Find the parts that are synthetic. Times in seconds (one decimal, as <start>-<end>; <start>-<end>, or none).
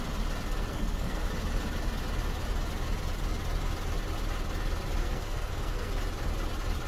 0.5-1.3; 5.0-5.9